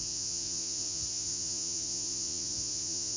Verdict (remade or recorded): remade